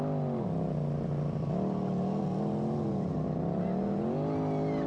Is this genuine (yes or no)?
yes